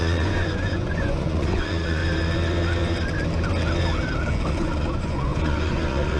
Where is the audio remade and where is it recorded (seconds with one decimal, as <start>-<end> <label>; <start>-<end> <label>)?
0.0-2.0 remade; 2.0-4.5 recorded; 4.5-6.2 remade